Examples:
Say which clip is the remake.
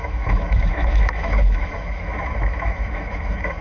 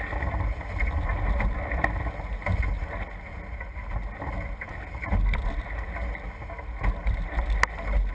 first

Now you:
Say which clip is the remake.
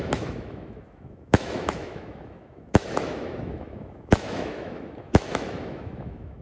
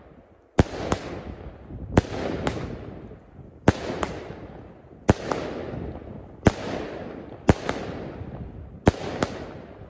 first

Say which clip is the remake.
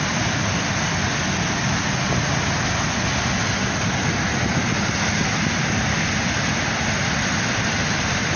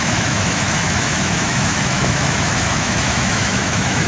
second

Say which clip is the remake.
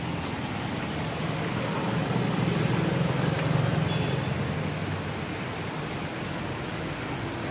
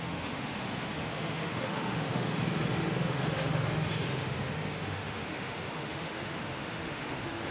second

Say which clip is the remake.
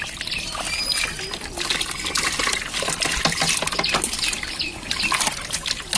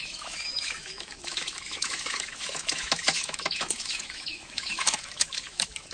second